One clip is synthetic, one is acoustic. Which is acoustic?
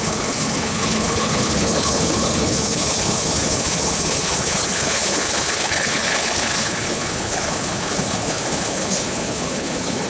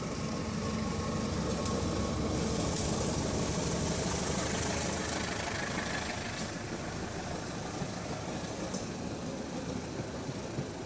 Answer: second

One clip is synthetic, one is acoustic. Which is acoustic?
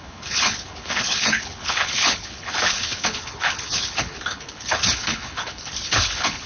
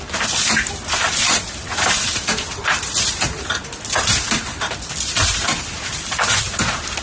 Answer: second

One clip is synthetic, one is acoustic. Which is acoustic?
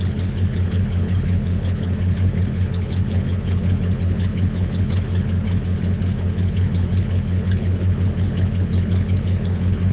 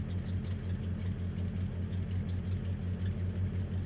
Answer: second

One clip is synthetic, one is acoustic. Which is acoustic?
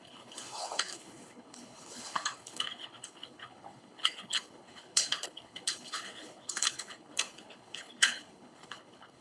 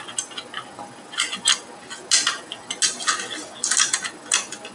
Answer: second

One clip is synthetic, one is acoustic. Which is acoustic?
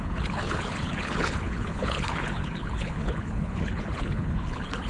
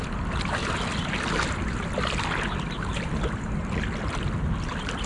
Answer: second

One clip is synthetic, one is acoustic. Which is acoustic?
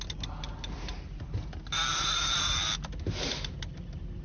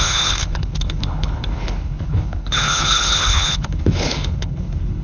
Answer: first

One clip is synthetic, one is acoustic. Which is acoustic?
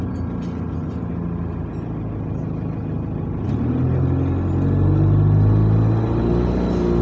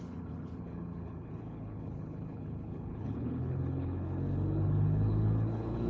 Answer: first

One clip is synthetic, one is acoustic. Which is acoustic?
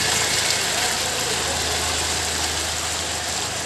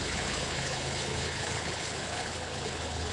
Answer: first